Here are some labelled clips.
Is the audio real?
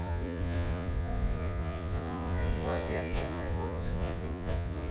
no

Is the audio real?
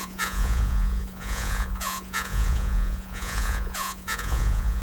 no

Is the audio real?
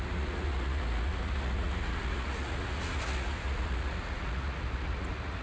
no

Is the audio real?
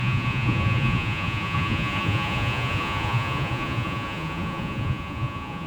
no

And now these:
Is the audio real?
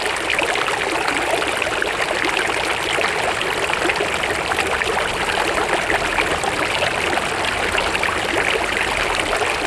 yes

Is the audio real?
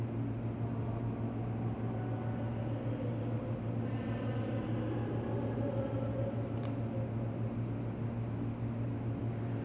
yes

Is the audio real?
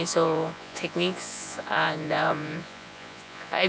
no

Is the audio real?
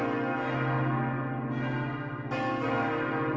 yes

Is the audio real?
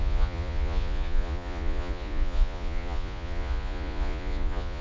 no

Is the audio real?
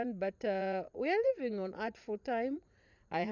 no